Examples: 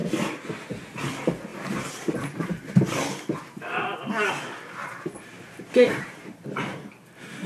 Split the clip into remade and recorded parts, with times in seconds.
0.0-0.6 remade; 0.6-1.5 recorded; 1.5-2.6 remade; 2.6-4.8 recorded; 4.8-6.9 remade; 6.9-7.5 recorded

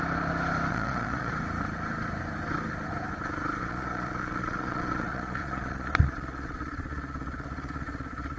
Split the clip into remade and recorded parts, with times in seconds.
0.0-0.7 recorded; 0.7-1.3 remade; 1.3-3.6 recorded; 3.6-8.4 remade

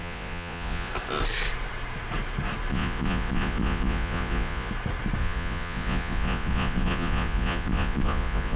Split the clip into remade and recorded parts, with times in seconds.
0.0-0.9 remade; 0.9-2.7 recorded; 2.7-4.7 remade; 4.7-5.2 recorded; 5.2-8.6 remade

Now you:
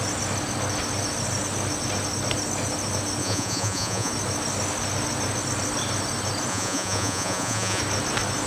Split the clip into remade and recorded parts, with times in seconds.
0.0-3.2 recorded; 3.2-4.1 remade; 4.1-6.5 recorded; 6.5-7.8 remade; 7.8-8.5 recorded

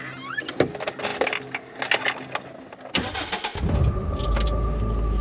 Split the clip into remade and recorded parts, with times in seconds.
0.0-3.5 recorded; 3.5-4.2 remade; 4.2-5.2 recorded